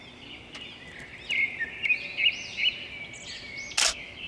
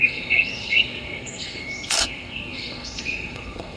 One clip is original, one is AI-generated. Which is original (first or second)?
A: first